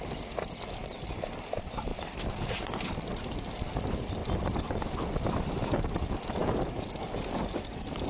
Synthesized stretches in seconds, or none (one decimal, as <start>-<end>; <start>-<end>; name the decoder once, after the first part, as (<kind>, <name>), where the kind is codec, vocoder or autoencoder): 0.0-8.1 (vocoder, BigVGAN v2)